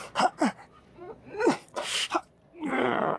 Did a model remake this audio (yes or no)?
yes